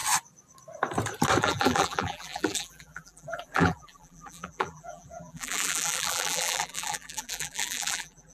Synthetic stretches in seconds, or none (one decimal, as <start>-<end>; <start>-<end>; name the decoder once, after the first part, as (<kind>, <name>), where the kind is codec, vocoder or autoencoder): 1.4-8.3 (vocoder, BigVGAN v2)